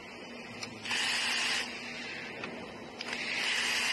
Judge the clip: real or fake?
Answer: real